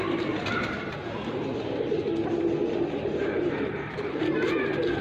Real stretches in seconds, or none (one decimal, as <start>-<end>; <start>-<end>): 1.5-3.4